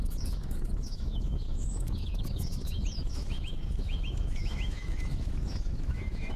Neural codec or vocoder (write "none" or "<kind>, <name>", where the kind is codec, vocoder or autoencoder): autoencoder, DAC-VAE